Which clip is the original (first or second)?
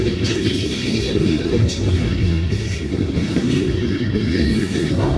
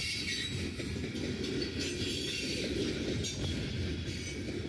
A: second